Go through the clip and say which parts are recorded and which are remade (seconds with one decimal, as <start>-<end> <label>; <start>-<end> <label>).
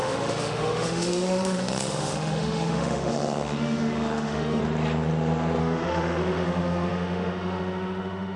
0.0-4.6 remade; 4.6-5.6 recorded; 5.6-8.4 remade